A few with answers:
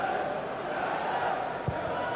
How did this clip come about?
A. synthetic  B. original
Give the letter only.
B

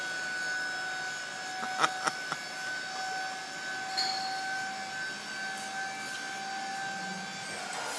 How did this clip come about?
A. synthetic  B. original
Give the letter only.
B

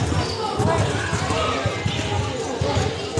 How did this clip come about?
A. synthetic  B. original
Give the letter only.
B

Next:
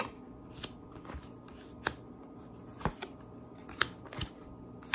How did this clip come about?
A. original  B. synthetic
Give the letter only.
A